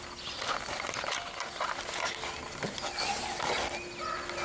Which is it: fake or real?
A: real